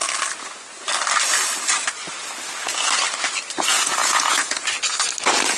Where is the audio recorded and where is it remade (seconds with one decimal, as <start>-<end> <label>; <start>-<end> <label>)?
0.0-3.7 recorded; 3.7-4.6 remade; 4.6-5.6 recorded